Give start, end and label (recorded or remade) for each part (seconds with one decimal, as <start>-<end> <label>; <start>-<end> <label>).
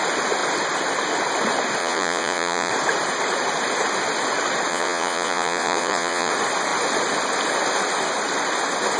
0.0-1.8 recorded; 1.8-2.7 remade; 2.7-4.7 recorded; 4.7-6.3 remade; 6.3-9.0 recorded